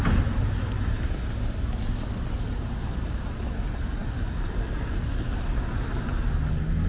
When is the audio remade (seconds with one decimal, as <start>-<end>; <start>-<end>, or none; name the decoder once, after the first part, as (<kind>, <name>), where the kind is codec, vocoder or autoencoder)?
none